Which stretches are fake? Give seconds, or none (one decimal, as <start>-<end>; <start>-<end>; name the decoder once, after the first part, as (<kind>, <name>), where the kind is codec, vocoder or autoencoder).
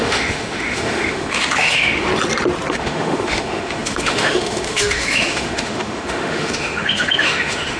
0.0-2.1 (autoencoder, DAC-VAE); 2.7-7.8